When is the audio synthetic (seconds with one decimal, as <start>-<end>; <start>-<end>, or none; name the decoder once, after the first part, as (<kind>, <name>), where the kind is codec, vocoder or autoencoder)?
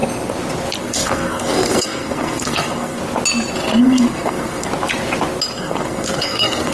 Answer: 0.8-3.0 (codec, SNAC); 3.8-4.7; 5.6-6.7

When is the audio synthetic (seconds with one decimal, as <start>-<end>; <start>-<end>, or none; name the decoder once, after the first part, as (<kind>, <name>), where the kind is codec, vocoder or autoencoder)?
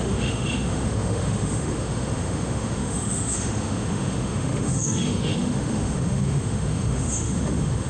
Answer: 0.0-7.9 (autoencoder, DAC-VAE)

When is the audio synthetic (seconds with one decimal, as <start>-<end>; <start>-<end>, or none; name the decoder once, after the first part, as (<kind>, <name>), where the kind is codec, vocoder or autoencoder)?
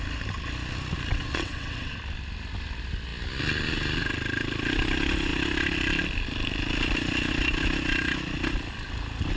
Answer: 1.1-2.0 (vocoder, WaveNeXt)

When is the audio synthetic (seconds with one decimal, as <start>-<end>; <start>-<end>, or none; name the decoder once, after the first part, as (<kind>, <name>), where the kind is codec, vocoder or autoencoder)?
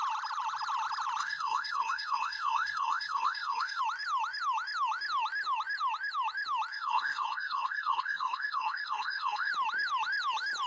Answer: 1.2-3.8 (codec, SNAC); 6.7-9.5